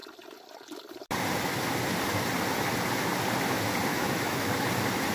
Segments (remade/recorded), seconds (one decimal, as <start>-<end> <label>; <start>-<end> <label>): 0.0-3.9 recorded; 3.9-4.5 remade; 4.5-5.1 recorded